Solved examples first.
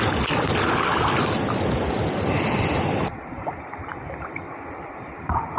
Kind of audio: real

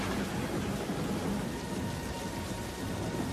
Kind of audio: real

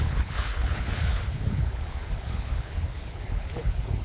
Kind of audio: fake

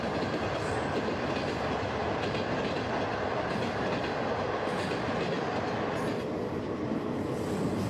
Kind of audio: real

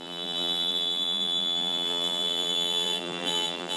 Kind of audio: fake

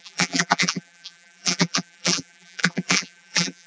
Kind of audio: fake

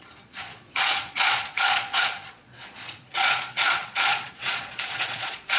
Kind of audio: fake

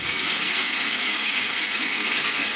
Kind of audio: fake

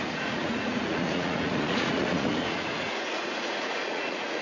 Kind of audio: fake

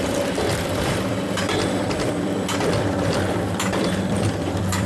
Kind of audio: fake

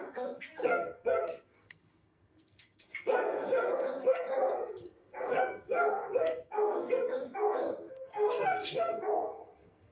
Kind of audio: fake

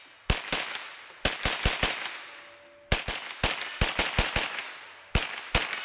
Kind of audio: real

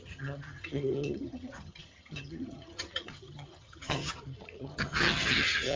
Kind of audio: fake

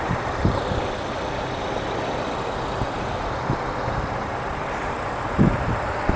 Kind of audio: real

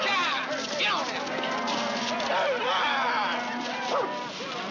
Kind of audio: real